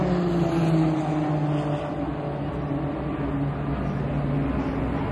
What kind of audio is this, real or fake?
real